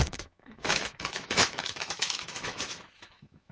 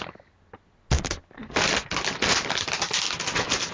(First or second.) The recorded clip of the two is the second